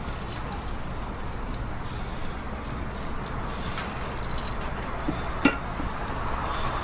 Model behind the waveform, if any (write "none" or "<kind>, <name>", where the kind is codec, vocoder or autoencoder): none